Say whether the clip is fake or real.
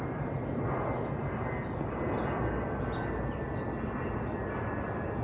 real